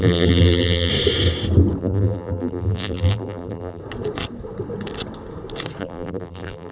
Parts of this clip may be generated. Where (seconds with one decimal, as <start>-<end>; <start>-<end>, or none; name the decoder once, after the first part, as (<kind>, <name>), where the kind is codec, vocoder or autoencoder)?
0.0-0.9 (vocoder, BigVGAN v2); 1.8-3.8; 5.8-6.7